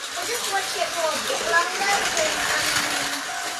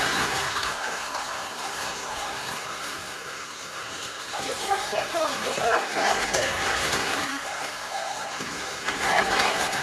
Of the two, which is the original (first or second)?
first